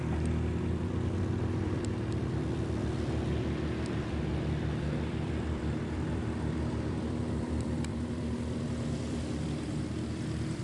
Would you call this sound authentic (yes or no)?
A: no